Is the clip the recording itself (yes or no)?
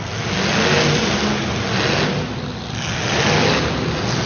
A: yes